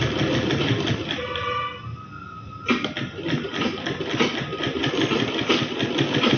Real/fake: real